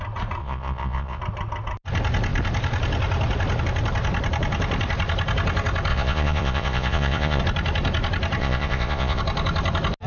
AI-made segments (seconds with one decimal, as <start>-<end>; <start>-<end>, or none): 0.4-1.2; 5.9-7.4; 8.4-9.2